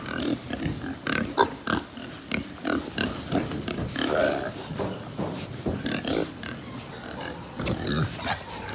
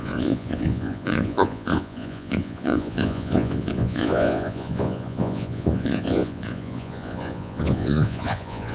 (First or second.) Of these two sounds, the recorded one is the first